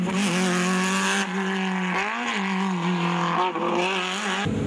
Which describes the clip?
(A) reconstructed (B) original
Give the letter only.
B